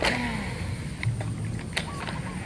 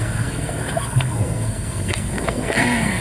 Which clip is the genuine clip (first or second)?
first